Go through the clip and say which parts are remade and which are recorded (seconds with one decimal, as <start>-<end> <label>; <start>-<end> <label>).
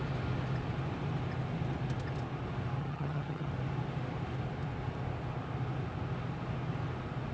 0.0-2.8 recorded; 2.8-3.5 remade; 3.5-7.3 recorded